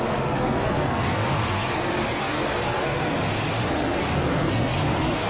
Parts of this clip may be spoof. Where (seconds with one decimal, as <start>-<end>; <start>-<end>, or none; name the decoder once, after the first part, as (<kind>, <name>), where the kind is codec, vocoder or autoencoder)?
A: 0.0-3.2 (codec, SNAC); 3.7-5.3